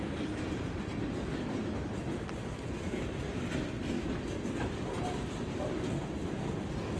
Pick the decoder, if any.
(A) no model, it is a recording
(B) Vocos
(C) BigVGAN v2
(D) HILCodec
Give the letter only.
A